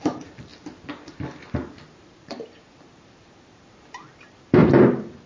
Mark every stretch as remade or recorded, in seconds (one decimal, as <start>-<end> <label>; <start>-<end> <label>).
0.0-0.5 remade; 0.5-1.9 recorded; 1.9-4.6 remade; 4.6-5.3 recorded